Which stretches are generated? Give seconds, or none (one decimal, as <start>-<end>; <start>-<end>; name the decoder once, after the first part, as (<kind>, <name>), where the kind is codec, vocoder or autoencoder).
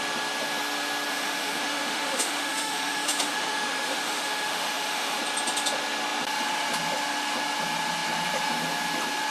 1.1-5.2 (autoencoder, DAC-VAE)